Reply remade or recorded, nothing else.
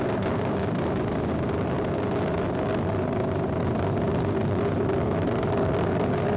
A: recorded